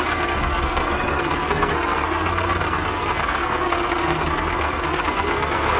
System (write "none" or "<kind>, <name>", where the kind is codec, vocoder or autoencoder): codec, SNAC